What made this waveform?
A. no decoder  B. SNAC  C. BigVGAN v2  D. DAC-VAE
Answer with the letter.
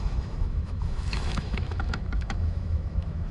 D